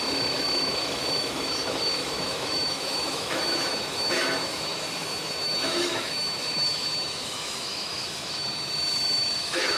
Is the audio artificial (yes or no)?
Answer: yes